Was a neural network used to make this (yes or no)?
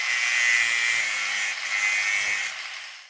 no